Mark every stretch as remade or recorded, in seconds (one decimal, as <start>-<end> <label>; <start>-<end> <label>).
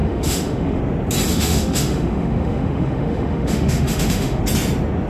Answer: 0.0-0.8 remade; 0.8-1.3 recorded; 1.3-4.4 remade; 4.4-5.1 recorded